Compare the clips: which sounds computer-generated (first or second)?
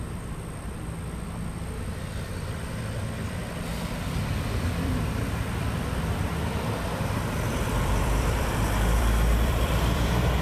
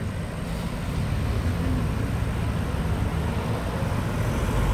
first